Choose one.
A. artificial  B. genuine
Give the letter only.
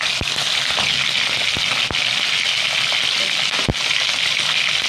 B